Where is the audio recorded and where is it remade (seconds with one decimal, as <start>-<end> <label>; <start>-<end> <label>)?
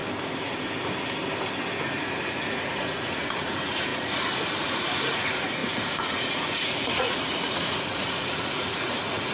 0.0-1.8 recorded; 1.8-9.3 remade